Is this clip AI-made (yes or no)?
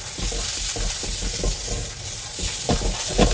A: no